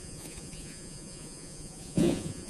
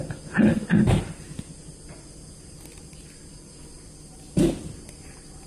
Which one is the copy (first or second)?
first